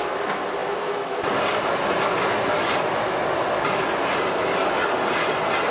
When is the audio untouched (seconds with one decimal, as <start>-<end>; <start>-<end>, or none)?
0.0-5.7